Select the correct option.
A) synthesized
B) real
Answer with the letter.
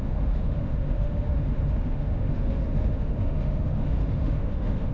A